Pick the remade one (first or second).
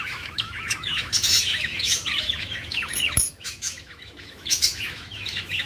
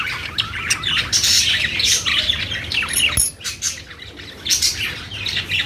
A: first